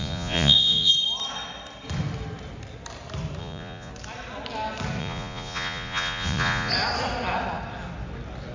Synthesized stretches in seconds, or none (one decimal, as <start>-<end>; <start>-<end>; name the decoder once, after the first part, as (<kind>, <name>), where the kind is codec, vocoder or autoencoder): 0.0-0.9 (vocoder, Vocos); 3.4-3.9; 5.0-6.7